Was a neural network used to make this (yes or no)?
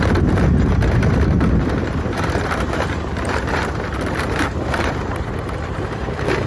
yes